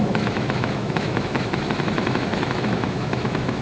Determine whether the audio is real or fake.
fake